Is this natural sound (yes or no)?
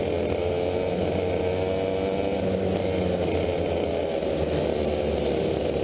yes